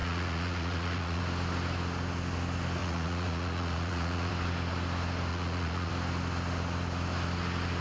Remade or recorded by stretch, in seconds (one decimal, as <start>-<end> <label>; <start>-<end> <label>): 0.0-1.2 remade; 1.2-2.8 recorded; 2.8-4.3 remade; 4.3-5.3 recorded; 5.3-5.9 remade; 5.9-7.8 recorded